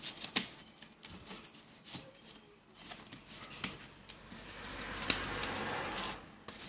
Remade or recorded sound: recorded